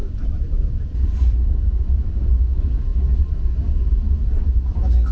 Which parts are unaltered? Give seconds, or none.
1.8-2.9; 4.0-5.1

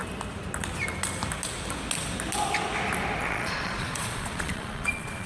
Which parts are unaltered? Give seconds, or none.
0.0-3.2

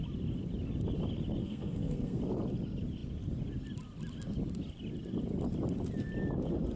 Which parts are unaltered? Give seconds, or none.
0.0-1.4; 2.2-6.8

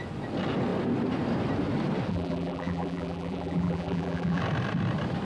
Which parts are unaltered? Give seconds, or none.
0.0-2.1; 4.4-5.2

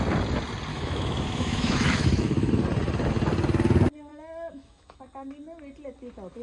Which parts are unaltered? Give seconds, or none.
0.0-0.7; 2.5-4.1; 5.0-6.4